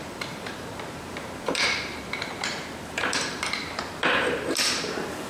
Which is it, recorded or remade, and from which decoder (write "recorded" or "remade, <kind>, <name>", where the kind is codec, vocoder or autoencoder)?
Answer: remade, vocoder, BigVGAN v2